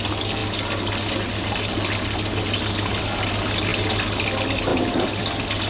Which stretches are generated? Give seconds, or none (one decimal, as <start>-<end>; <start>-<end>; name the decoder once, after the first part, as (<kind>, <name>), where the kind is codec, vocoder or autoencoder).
none